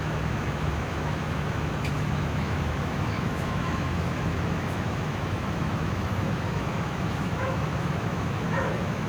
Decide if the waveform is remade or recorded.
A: remade